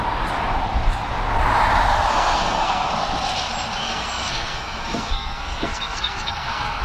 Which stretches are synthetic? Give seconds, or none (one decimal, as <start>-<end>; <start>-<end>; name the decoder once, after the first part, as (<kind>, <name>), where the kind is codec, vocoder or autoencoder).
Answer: 2.1-2.9 (codec, SNAC); 3.8-6.8